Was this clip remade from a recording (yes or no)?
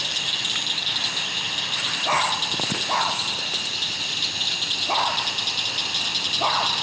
no